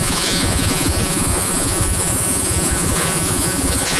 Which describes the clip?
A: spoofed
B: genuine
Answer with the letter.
A